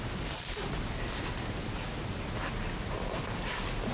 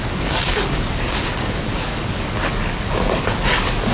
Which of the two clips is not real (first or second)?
second